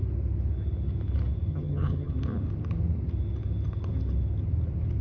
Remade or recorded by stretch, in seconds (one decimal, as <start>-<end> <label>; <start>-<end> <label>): 0.0-1.5 recorded; 1.5-2.1 remade; 2.1-5.0 recorded